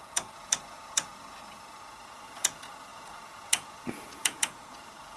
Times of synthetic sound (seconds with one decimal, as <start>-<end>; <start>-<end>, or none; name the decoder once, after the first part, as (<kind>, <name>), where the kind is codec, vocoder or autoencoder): 0.0-5.2 (vocoder, Vocos)